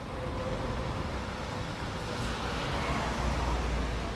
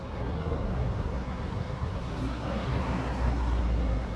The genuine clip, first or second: first